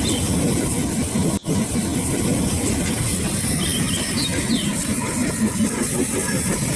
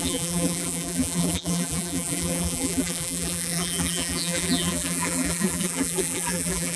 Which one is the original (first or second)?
first